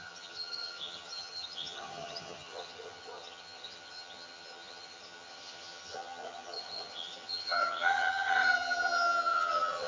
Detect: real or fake fake